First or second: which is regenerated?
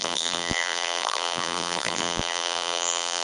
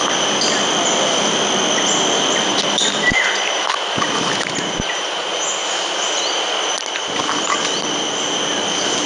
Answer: first